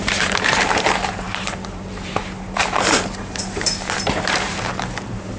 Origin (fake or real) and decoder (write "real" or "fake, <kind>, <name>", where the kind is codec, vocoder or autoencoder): fake, vocoder, BigVGAN v2